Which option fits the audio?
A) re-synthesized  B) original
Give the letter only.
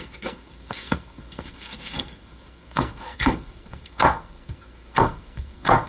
A